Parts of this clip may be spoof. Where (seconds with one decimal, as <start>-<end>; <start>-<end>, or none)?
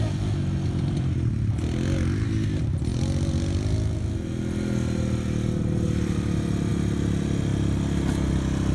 none